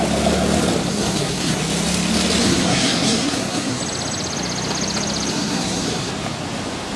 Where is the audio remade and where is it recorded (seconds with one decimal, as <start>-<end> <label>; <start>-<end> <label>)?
0.0-0.9 recorded; 0.9-1.6 remade; 1.6-2.4 recorded; 2.4-3.8 remade; 3.8-5.3 recorded; 5.3-6.1 remade; 6.1-7.0 recorded